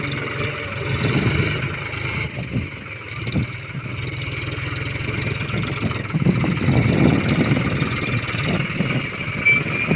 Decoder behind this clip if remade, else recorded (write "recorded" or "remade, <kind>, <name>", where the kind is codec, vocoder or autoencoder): recorded